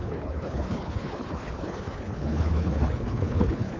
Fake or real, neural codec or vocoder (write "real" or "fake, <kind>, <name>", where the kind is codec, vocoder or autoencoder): fake, codec, HILCodec